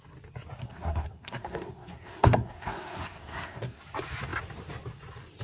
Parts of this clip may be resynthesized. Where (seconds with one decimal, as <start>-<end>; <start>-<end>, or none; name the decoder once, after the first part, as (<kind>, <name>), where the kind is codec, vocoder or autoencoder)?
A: 0.6-3.8 (codec, SNAC)